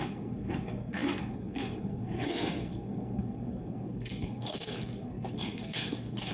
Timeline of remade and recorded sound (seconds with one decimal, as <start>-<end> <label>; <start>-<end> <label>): 0.0-6.3 remade